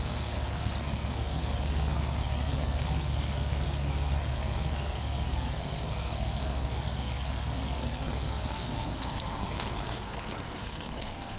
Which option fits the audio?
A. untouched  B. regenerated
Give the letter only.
B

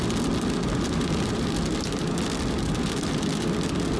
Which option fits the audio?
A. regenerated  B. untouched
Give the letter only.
B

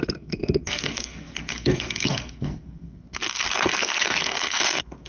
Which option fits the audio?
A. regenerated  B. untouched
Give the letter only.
A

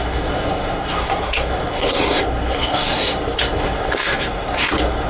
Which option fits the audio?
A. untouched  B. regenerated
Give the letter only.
B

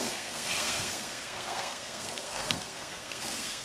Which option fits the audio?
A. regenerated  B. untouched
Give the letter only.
A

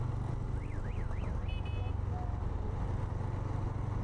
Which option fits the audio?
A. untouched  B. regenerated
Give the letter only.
A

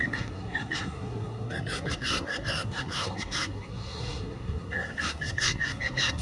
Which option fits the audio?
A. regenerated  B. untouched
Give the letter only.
A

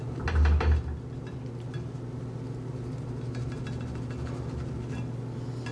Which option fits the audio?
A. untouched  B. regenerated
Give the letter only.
A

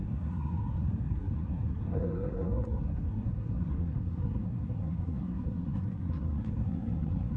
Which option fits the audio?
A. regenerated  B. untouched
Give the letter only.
A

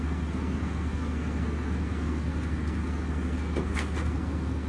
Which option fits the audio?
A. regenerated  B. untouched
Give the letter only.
A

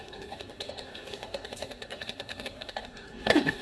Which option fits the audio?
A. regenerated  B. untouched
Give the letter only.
A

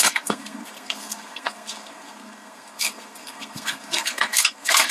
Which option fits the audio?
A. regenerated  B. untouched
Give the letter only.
A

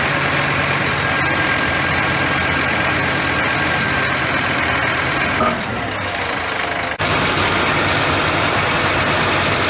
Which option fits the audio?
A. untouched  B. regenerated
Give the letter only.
A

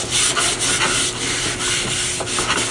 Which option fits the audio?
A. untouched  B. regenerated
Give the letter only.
A